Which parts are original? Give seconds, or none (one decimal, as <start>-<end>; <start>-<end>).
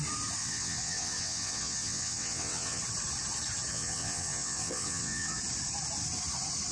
0.0-0.4; 2.8-3.7; 5.4-6.7